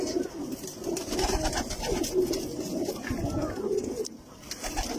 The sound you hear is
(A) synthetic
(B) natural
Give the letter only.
B